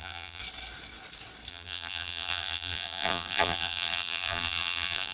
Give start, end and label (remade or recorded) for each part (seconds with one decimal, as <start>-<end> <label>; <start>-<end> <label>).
0.0-0.4 remade; 0.4-1.5 recorded; 1.5-5.1 remade